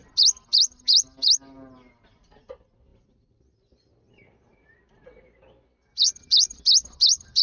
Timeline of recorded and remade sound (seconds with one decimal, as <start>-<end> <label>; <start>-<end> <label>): 0.0-2.9 recorded; 2.9-7.4 remade